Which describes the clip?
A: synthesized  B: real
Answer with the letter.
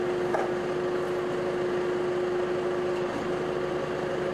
B